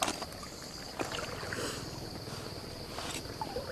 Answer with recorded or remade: recorded